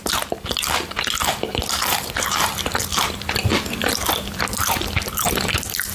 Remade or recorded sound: recorded